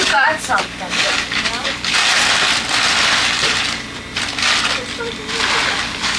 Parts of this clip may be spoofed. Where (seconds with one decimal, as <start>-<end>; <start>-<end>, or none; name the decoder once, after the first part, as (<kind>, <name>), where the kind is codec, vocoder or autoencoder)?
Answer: 0.0-2.0 (codec, DAC); 5.7-6.2